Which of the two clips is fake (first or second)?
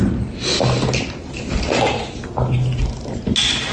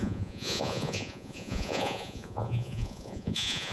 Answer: second